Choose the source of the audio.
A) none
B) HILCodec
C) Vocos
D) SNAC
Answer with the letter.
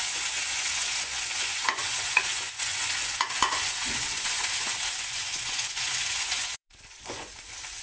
C